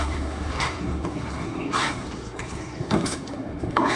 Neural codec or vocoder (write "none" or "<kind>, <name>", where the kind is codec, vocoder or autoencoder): codec, SNAC